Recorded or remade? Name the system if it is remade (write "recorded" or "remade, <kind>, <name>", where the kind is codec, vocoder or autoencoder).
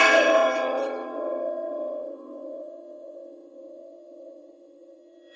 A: remade, vocoder, HiFi-GAN